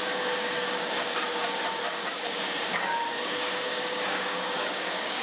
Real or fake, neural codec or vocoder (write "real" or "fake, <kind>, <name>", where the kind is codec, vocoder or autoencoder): fake, codec, DAC